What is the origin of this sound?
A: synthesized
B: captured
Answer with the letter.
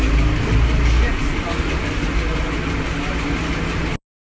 B